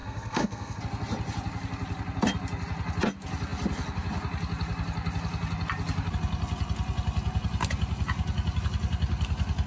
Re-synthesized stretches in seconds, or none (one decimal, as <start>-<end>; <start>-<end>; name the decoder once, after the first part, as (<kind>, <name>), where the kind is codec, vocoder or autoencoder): 0.0-0.8 (codec, SNAC)